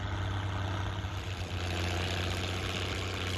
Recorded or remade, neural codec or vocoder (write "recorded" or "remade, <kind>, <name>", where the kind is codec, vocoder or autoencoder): recorded